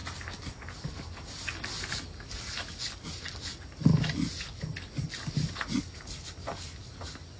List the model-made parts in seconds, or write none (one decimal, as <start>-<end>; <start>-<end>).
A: none